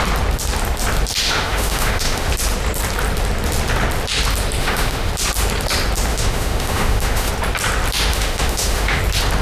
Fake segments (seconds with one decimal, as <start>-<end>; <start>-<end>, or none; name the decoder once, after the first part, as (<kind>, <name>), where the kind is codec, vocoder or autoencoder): 1.2-2.3 (autoencoder, DAC-VAE); 4.6-5.1; 6.1-7.3; 8.1-9.0